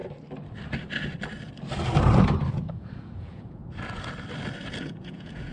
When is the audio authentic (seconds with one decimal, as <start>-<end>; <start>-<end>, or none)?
0.0-2.5; 3.6-4.8